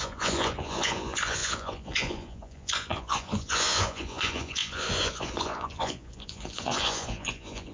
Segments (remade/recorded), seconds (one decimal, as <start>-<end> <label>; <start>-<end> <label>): 0.0-7.7 remade